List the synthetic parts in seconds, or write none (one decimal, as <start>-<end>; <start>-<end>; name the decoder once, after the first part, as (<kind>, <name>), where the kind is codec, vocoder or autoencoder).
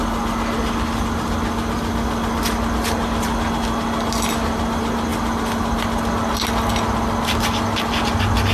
none